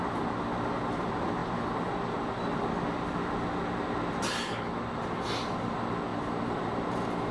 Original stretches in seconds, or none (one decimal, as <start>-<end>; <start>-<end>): 0.0-6.1